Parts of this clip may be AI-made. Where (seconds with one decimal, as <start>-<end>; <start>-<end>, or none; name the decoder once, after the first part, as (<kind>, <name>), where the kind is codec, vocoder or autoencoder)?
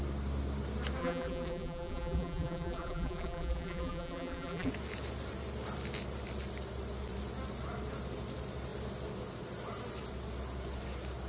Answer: 1.0-4.7 (vocoder, BigVGAN v2)